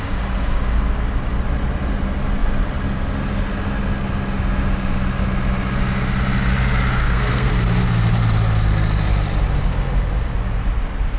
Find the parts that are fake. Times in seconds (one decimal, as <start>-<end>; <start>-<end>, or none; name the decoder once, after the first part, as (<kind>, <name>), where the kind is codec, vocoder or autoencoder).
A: 7.0-7.5 (codec, SNAC)